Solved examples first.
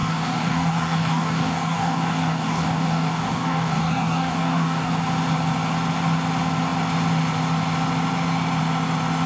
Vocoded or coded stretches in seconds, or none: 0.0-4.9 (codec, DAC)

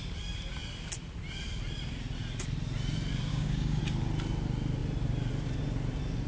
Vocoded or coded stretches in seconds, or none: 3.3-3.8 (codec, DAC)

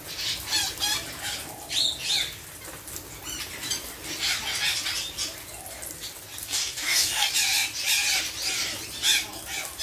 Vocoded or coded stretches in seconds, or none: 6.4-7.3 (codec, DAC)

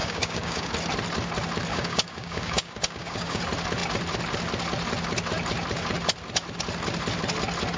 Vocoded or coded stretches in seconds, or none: 0.0-0.7 (codec, DAC); 1.7-3.4